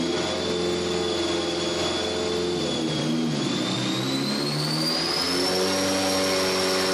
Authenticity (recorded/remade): recorded